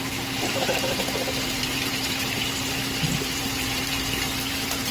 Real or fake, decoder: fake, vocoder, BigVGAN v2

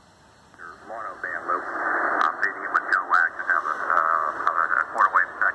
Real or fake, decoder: real